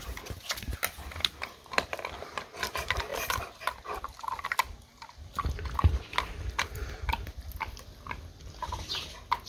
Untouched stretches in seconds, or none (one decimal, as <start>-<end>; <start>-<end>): 0.0-3.1; 8.4-9.5